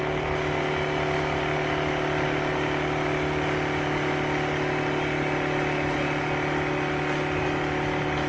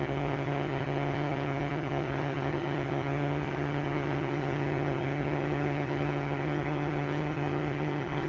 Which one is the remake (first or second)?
second